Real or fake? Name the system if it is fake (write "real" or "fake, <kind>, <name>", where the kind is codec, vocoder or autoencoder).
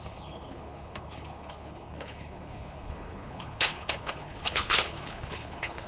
fake, codec, HILCodec